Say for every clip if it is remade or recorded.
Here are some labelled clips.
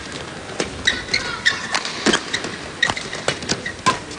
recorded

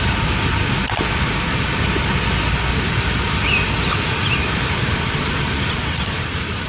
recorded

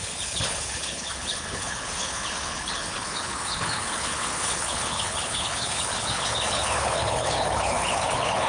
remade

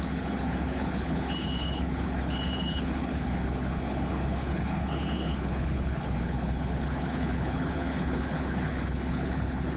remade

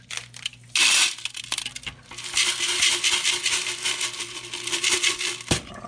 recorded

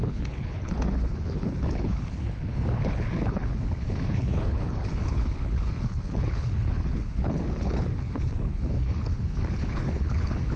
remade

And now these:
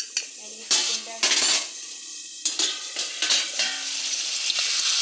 recorded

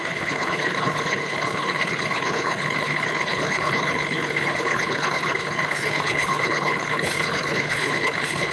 remade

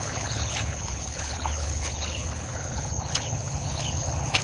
remade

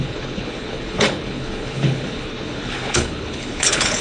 remade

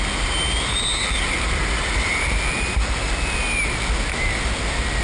recorded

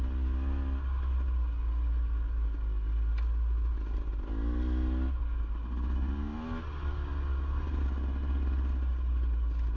recorded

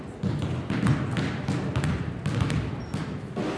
recorded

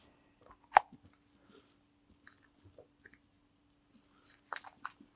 recorded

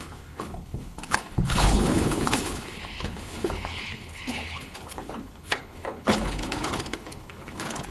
remade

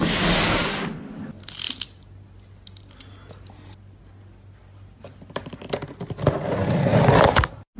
recorded